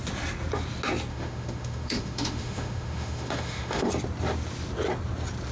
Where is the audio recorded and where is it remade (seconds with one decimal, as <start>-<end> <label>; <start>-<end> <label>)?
0.0-1.1 recorded; 1.1-3.9 remade; 3.9-5.5 recorded